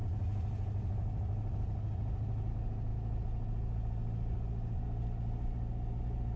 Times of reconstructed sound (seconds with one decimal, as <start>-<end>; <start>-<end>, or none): none